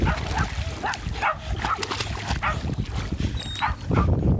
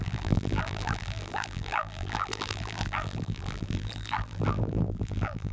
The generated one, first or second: second